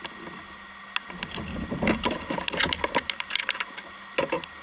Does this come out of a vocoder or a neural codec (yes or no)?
no